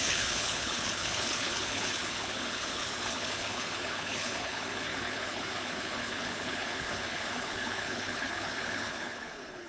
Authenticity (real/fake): fake